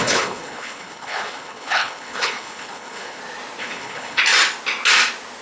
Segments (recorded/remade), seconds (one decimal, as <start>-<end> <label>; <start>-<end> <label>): 0.0-3.2 remade; 3.2-3.6 recorded; 3.6-4.2 remade; 4.2-5.4 recorded